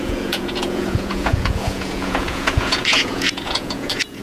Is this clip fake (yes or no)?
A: yes